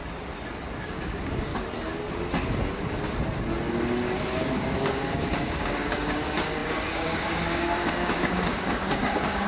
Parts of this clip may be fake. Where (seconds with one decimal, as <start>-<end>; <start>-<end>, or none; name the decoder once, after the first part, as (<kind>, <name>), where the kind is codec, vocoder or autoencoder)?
0.8-1.5 (codec, DAC); 4.4-9.5